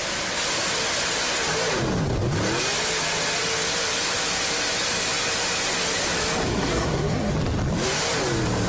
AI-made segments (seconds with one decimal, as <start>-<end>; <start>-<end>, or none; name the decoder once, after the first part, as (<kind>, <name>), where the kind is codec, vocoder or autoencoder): 6.5-7.3 (codec, SNAC)